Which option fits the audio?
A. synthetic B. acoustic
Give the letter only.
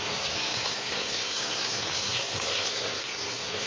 A